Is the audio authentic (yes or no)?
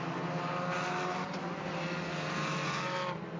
yes